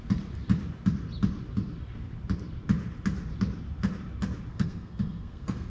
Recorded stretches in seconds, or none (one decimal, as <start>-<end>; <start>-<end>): 0.0-4.5